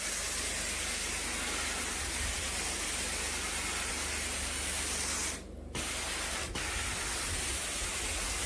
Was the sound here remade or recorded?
recorded